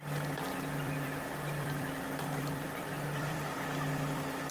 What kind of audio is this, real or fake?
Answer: fake